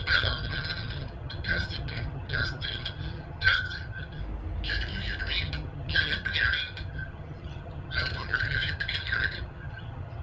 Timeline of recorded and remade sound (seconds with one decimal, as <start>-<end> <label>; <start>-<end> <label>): 0.0-4.2 remade; 4.2-5.4 recorded; 5.4-10.2 remade